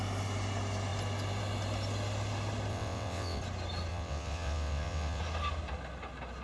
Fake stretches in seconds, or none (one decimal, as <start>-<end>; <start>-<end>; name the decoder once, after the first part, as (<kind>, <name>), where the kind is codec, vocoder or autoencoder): 2.7-3.4 (vocoder, WaveNeXt); 3.9-5.2